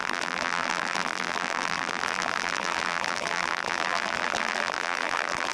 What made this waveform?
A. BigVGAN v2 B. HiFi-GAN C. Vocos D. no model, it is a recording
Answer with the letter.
A